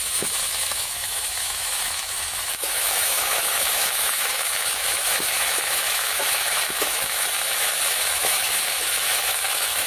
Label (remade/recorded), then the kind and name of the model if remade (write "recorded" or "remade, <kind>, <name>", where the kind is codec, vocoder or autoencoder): remade, autoencoder, DAC-VAE